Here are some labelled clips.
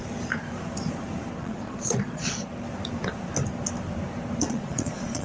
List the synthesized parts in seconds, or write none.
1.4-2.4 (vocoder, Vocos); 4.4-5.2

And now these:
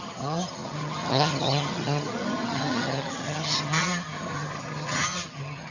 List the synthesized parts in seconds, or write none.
0.0-5.7 (vocoder, HiFi-GAN)

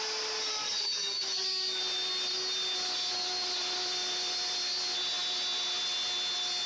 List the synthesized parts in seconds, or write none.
0.5-1.8 (codec, DAC)

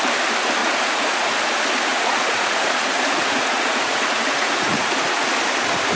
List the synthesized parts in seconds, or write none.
0.6-1.4 (vocoder, Vocos); 1.9-4.9